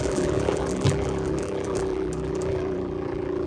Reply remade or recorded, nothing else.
remade